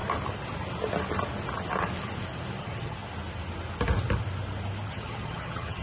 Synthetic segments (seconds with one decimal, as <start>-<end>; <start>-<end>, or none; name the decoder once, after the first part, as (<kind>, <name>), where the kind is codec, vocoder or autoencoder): 2.6-3.0 (vocoder, HiFi-GAN); 4.9-5.8